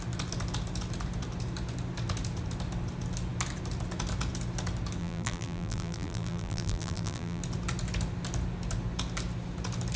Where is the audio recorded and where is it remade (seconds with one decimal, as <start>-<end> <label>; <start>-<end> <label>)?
0.0-5.0 recorded; 5.0-7.4 remade; 7.4-10.0 recorded